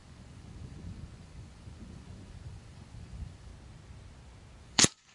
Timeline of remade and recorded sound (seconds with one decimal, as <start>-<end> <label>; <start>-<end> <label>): 0.0-3.5 remade; 3.5-4.6 recorded; 4.6-5.1 remade

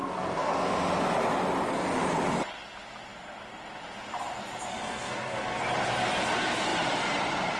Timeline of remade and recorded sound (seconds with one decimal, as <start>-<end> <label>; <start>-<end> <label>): 0.0-0.5 remade; 0.5-4.7 recorded; 4.7-5.6 remade; 5.6-7.6 recorded